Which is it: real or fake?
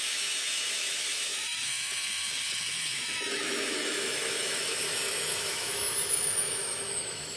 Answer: fake